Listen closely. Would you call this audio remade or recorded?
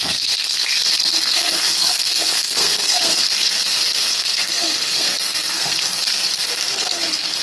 remade